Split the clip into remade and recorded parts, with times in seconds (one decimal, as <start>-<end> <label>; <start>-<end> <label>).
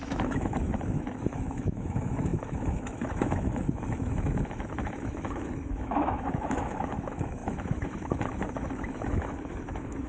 0.0-10.1 remade